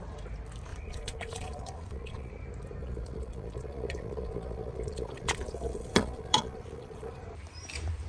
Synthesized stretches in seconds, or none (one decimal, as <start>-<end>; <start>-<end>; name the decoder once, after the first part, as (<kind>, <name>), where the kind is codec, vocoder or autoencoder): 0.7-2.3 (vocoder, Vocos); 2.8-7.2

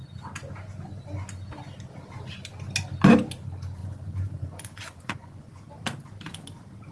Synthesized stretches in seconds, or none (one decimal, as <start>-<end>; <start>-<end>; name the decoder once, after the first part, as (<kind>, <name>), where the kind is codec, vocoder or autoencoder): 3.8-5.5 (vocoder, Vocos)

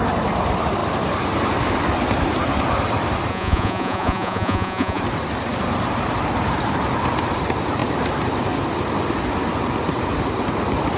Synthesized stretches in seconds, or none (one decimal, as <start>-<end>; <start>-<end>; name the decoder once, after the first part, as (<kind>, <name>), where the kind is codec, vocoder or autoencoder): 3.3-5.0 (vocoder, Vocos)